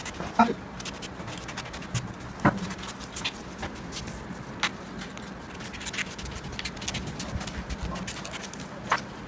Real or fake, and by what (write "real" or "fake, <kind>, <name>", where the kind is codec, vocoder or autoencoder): real